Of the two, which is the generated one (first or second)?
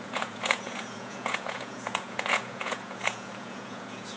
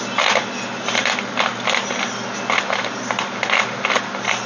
first